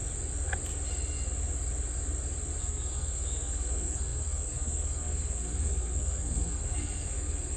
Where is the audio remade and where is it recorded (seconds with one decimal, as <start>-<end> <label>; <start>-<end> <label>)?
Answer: 0.0-2.6 recorded; 2.6-7.6 remade